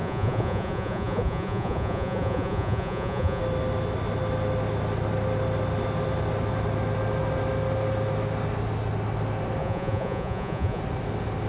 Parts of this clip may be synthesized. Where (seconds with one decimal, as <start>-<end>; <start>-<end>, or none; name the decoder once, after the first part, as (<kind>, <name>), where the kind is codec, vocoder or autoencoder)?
0.0-3.4 (vocoder, Vocos); 9.6-10.8